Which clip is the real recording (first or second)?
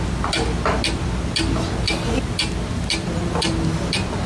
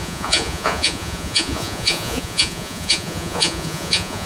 first